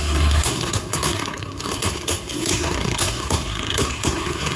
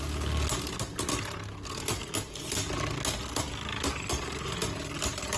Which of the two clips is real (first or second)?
second